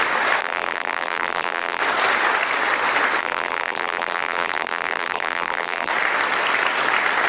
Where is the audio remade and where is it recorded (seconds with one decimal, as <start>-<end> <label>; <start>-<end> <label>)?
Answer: 0.0-0.4 recorded; 0.4-1.8 remade; 1.8-3.2 recorded; 3.2-5.9 remade; 5.9-7.3 recorded